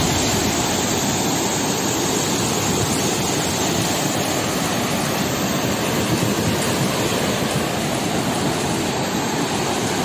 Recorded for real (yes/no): yes